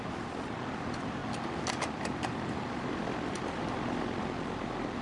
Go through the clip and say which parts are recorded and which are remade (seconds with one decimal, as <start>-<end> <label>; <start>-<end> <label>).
0.0-5.0 recorded